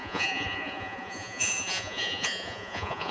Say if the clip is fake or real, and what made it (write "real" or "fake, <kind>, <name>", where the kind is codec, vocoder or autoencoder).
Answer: fake, vocoder, Vocos